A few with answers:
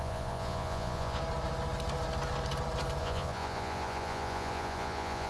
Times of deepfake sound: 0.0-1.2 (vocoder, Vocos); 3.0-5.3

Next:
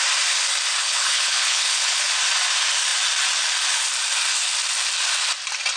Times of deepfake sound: 0.8-2.1 (codec, HILCodec)

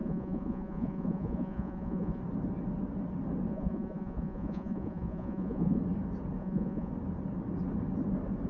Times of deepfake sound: 0.0-2.2 (vocoder, Vocos); 3.5-5.8; 6.4-6.9

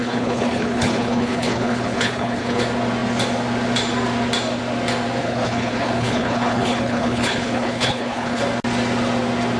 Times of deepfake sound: 0.0-2.6 (codec, HILCodec); 5.2-8.4

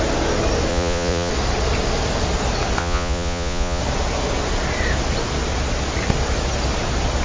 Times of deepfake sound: 0.7-1.3 (vocoder, Vocos); 2.8-3.8

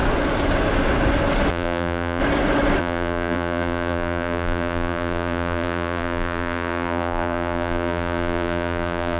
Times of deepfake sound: 1.5-2.2 (vocoder, BigVGAN v2); 2.8-9.2

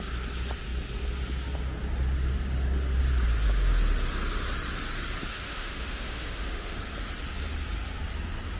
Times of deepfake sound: 5.3-6.8 (autoencoder, DAC-VAE)